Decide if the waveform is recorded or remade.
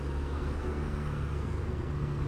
remade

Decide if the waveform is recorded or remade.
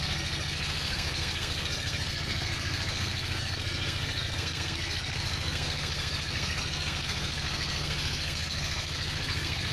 remade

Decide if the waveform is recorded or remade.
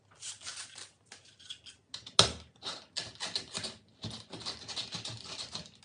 recorded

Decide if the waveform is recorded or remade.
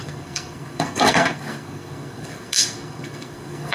remade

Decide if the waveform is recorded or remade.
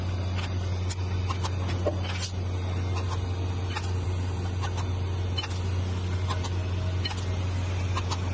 recorded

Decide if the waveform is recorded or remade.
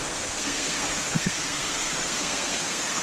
remade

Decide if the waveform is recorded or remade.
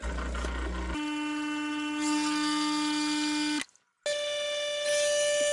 recorded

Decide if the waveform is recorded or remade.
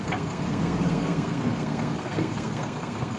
remade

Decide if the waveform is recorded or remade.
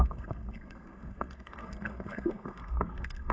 remade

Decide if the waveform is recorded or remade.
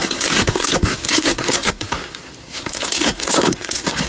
remade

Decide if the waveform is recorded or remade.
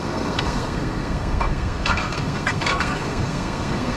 remade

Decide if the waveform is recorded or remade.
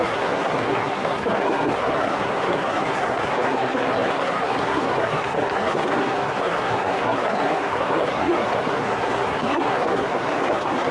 remade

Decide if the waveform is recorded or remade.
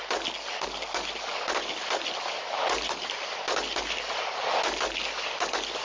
recorded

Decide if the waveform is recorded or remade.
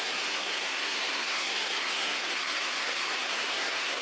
remade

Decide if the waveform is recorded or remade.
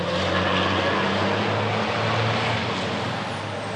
recorded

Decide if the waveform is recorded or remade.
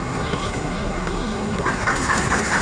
remade